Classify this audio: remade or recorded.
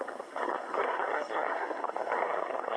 remade